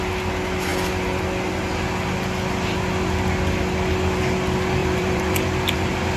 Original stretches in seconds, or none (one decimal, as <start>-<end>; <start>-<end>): 0.0-4.8; 5.4-6.2